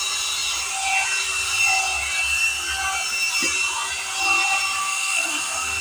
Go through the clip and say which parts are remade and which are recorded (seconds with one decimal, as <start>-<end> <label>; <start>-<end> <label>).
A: 0.0-4.8 recorded; 4.8-5.8 remade